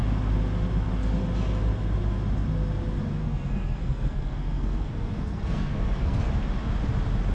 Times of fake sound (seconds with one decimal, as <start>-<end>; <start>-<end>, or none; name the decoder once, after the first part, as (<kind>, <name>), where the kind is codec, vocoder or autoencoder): 3.2-6.3 (codec, SNAC)